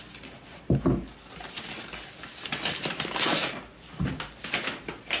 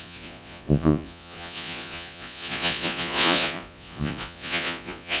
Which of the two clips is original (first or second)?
first